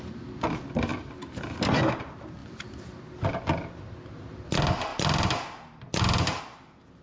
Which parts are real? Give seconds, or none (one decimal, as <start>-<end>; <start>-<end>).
0.0-2.4; 3.0-4.9; 6.4-7.0